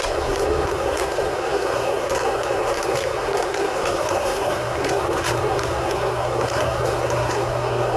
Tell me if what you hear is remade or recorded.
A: remade